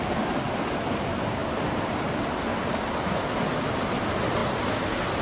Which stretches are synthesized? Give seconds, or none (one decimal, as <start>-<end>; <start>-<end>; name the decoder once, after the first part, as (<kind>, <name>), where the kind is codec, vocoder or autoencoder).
none